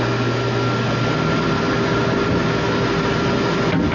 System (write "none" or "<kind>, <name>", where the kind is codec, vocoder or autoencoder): none